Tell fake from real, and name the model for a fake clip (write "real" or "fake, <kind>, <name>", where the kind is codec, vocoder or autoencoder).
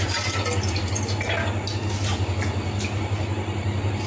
real